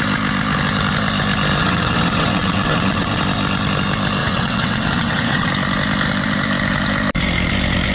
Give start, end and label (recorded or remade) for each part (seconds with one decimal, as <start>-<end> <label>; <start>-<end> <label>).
0.0-1.6 recorded; 1.6-3.2 remade; 3.2-4.2 recorded; 4.2-5.5 remade; 5.5-7.9 recorded